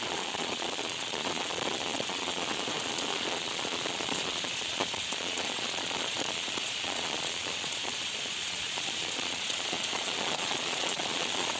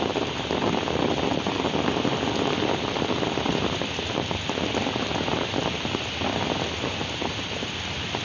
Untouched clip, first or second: second